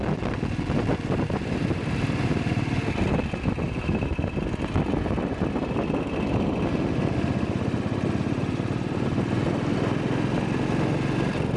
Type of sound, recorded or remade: recorded